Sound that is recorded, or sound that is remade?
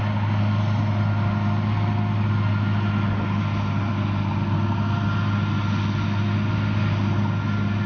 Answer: recorded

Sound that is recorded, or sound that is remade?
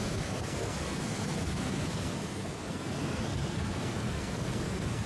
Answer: remade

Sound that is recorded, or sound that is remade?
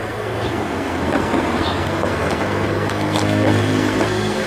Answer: remade